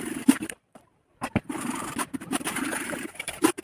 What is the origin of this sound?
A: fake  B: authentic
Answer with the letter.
A